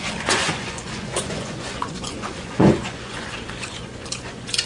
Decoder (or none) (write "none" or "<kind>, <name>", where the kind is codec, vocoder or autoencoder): vocoder, Vocos